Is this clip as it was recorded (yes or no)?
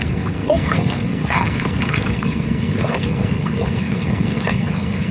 no